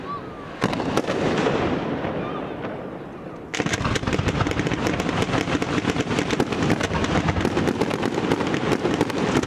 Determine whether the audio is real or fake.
real